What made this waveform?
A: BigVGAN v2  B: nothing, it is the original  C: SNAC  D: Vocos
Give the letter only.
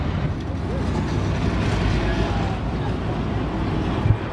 B